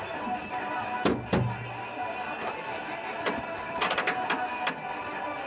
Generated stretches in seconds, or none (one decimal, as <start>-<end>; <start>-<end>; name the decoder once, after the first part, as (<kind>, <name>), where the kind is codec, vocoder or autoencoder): none